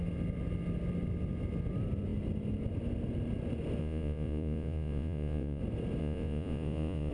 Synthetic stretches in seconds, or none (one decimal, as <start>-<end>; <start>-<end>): 3.8-5.6; 6.0-7.1